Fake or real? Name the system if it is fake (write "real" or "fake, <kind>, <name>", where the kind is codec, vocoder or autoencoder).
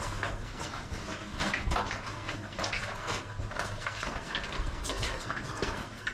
fake, codec, SNAC